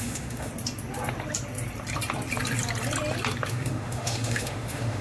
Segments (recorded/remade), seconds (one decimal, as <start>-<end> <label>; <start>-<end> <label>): 0.0-0.5 remade; 0.5-3.5 recorded; 3.5-5.0 remade